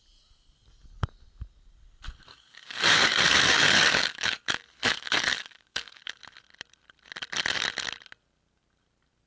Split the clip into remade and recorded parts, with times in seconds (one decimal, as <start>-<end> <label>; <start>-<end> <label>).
0.0-2.3 recorded; 2.3-6.2 remade; 6.2-9.3 recorded